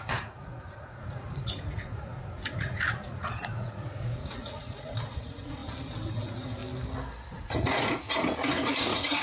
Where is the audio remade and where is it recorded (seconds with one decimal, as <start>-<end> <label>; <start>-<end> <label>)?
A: 0.0-5.6 remade; 5.6-6.1 recorded; 6.1-6.6 remade; 6.6-7.3 recorded; 7.3-9.2 remade